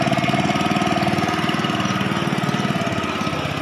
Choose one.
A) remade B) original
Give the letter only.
B